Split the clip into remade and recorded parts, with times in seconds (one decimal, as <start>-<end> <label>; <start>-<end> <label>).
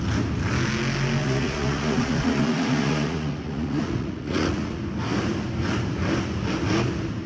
0.0-1.2 recorded; 1.2-4.8 remade; 4.8-7.3 recorded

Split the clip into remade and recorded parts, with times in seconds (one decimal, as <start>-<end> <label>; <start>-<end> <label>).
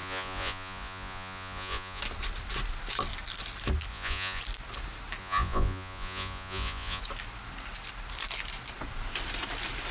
0.0-2.0 remade; 2.0-3.9 recorded; 3.9-4.4 remade; 4.4-5.2 recorded; 5.2-7.0 remade; 7.0-9.9 recorded